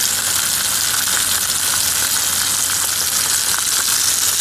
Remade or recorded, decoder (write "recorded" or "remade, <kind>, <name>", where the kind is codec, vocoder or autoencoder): recorded